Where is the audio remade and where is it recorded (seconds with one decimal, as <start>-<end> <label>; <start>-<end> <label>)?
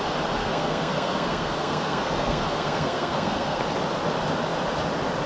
0.0-0.4 recorded; 0.4-3.6 remade; 3.6-5.3 recorded